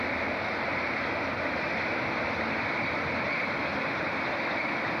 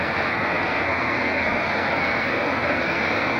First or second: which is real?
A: first